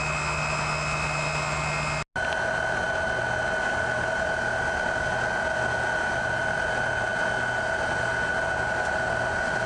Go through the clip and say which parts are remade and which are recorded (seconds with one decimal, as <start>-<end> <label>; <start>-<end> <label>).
0.0-9.7 recorded